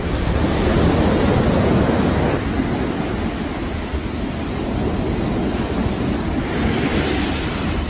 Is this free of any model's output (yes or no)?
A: yes